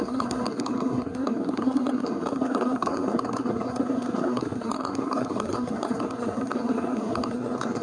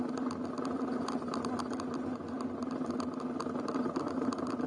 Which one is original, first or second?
second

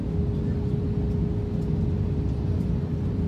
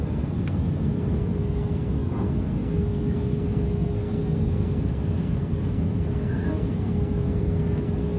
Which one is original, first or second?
first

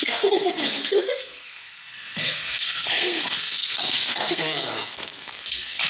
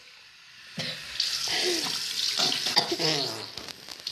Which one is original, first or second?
second